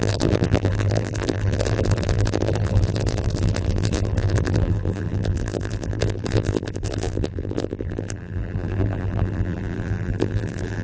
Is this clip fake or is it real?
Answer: fake